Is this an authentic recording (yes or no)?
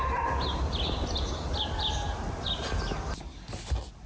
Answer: yes